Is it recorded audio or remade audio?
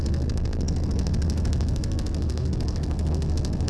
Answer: remade